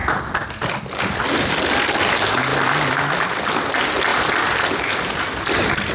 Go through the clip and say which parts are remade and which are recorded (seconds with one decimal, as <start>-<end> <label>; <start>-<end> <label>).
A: 0.0-5.9 recorded